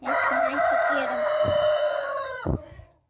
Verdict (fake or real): fake